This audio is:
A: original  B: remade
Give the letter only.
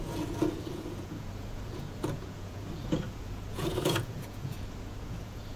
B